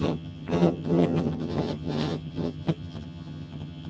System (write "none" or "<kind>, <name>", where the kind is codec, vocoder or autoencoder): vocoder, HiFi-GAN